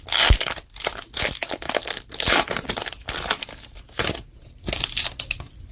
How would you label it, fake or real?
real